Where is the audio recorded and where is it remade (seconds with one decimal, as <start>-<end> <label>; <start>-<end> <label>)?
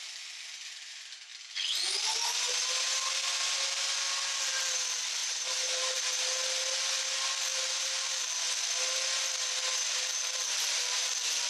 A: 0.0-5.2 recorded; 5.2-6.0 remade; 6.0-7.5 recorded; 7.5-8.4 remade; 8.4-10.4 recorded; 10.4-11.1 remade; 11.1-11.5 recorded